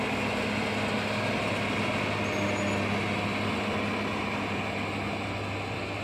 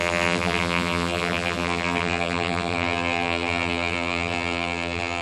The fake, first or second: second